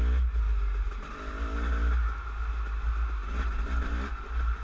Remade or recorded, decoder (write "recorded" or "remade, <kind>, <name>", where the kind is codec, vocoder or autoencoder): recorded